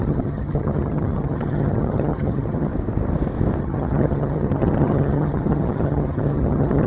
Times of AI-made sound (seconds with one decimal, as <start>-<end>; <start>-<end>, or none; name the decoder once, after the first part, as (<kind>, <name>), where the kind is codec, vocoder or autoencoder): 0.0-2.7 (vocoder, HiFi-GAN); 3.6-6.9